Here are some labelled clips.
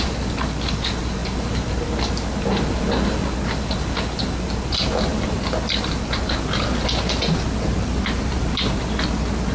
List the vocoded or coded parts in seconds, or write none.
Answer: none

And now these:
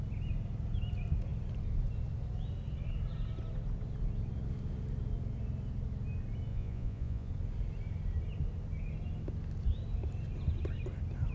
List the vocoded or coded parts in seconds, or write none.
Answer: 6.5-7.3

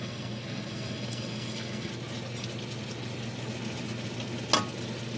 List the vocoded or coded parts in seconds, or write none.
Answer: 0.0-1.9

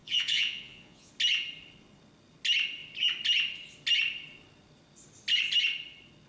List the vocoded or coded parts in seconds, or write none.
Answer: 0.0-1.1

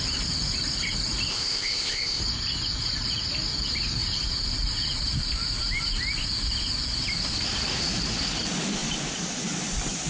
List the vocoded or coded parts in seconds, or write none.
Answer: 1.3-2.2

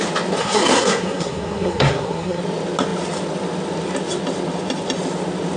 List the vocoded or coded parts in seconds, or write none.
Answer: 0.4-2.4